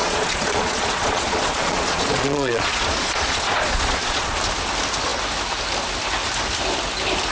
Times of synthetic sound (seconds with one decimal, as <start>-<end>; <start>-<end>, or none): 0.0-4.4